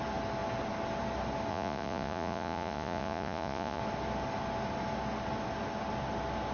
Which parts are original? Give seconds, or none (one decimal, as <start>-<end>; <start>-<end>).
0.0-1.5; 3.8-6.5